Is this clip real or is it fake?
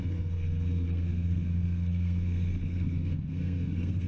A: fake